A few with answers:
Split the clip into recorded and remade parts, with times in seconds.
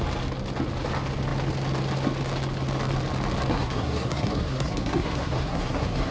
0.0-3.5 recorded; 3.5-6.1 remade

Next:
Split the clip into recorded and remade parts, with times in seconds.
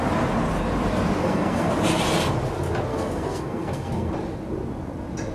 0.0-1.2 recorded; 1.2-1.7 remade; 1.7-2.9 recorded; 2.9-4.1 remade; 4.1-5.3 recorded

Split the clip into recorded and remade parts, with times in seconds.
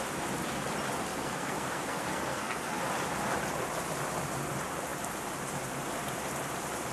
0.0-1.1 recorded; 1.1-2.8 remade; 2.8-6.9 recorded